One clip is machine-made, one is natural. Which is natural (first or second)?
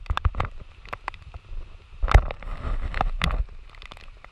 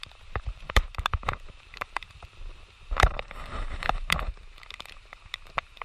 first